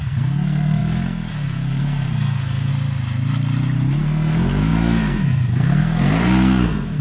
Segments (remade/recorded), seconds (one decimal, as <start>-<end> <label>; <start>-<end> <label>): 0.0-2.7 remade; 2.7-4.0 recorded; 4.0-7.0 remade